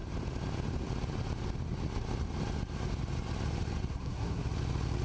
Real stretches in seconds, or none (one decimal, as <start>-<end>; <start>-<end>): 0.0-3.9; 4.4-5.0